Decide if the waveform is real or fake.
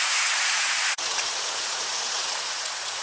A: fake